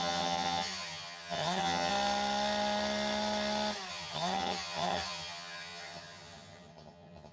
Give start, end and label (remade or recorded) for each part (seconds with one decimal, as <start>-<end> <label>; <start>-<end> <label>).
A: 0.0-1.9 remade; 1.9-3.9 recorded; 3.9-7.3 remade